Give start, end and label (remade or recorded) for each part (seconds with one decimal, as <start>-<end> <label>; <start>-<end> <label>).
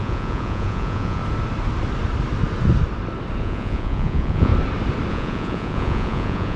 0.0-1.2 remade; 1.2-3.4 recorded; 3.4-4.5 remade; 4.5-5.1 recorded; 5.1-6.6 remade